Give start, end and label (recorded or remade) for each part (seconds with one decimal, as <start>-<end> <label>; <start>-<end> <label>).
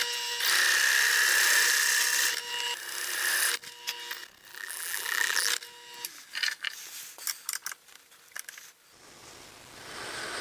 0.0-4.5 recorded; 4.5-5.5 remade; 5.5-10.4 recorded